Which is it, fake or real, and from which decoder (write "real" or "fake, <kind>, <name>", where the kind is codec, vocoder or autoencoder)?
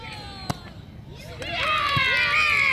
real